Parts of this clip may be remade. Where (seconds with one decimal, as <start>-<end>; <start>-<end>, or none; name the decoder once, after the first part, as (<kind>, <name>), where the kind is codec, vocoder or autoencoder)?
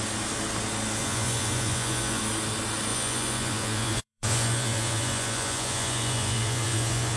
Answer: 1.0-2.2 (vocoder, Vocos); 2.9-7.2